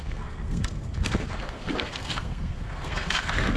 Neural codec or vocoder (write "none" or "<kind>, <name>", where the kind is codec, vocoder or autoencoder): codec, SNAC